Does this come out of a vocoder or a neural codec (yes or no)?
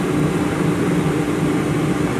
no